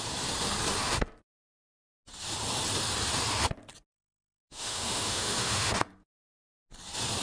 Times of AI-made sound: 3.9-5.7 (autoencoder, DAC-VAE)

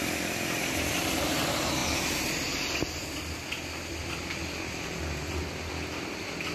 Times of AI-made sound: none

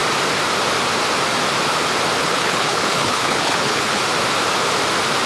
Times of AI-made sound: 2.2-4.0 (codec, HILCodec)

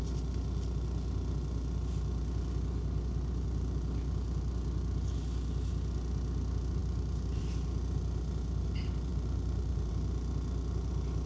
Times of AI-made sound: none

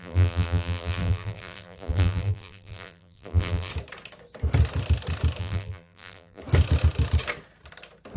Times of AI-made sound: 0.0-3.7 (vocoder, BigVGAN v2); 5.4-6.4